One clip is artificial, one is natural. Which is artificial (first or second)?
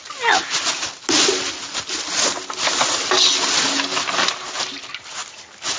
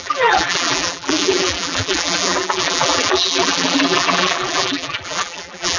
second